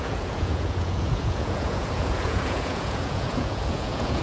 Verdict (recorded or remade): remade